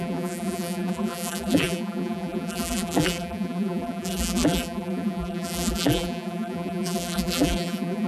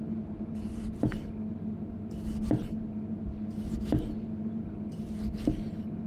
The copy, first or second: first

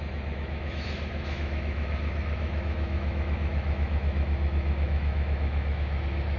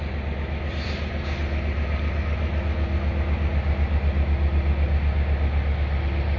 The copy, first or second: first